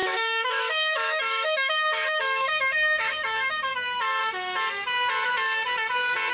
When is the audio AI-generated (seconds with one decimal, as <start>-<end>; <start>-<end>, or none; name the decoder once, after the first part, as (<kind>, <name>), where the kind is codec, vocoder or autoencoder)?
0.0-4.2 (autoencoder, DAC-VAE)